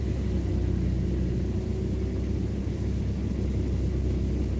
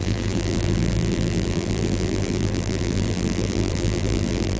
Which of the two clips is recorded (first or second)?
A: first